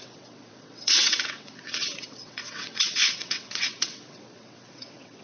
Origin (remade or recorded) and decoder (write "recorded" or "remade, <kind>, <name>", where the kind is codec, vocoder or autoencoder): remade, vocoder, WaveNeXt